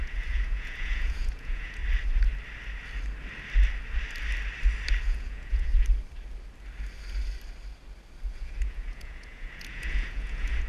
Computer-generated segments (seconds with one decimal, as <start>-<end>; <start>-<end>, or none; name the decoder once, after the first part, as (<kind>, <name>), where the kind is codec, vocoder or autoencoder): 0.0-1.8 (vocoder, Vocos); 5.0-5.7; 8.3-10.7